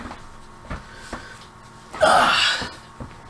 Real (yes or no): yes